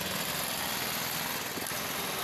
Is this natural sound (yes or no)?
yes